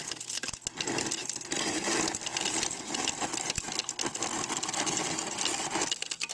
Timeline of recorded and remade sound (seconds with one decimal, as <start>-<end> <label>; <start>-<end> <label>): 0.0-1.2 recorded; 1.2-1.8 remade; 1.8-6.3 recorded